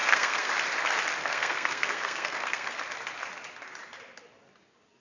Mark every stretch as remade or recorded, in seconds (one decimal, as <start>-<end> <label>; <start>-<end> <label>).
0.0-0.5 remade; 0.5-1.2 recorded; 1.2-2.8 remade; 2.8-5.0 recorded